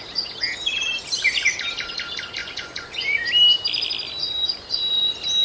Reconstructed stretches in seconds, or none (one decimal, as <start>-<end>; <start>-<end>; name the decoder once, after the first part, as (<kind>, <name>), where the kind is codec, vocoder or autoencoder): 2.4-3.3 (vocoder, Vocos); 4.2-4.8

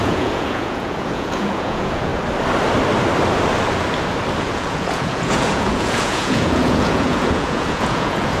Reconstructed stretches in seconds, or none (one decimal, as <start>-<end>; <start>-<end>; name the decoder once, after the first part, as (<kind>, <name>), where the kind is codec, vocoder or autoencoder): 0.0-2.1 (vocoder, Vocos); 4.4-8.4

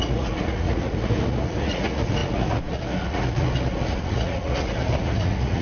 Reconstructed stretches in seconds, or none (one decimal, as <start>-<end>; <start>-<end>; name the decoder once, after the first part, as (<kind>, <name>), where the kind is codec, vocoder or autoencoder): 0.0-5.6 (vocoder, Vocos)